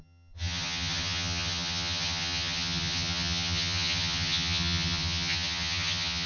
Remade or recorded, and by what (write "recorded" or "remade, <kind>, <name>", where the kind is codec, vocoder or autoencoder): remade, vocoder, HiFi-GAN